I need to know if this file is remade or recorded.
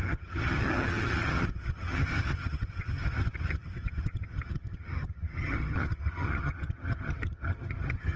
remade